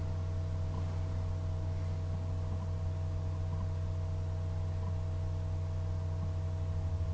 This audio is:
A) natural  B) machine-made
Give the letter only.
A